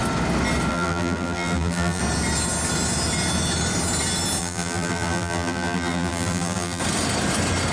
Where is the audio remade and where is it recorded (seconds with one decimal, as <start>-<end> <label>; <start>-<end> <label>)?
0.0-0.7 recorded; 0.7-2.0 remade; 2.0-4.4 recorded; 4.4-6.8 remade; 6.8-7.7 recorded